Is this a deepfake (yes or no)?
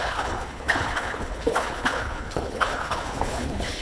yes